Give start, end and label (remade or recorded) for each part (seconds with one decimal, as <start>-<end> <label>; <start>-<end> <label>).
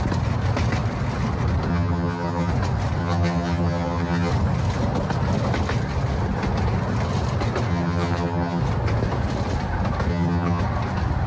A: 0.0-1.7 recorded; 1.7-2.5 remade; 2.5-3.0 recorded; 3.0-4.3 remade; 4.3-7.7 recorded; 7.7-8.6 remade; 8.6-10.1 recorded; 10.1-10.6 remade; 10.6-11.3 recorded